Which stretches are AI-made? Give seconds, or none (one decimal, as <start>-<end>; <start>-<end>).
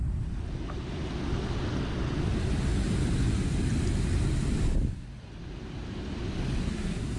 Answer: 6.6-7.2